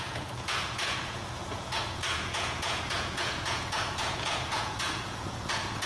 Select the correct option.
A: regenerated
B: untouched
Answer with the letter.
A